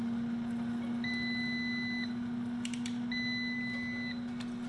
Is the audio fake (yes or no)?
no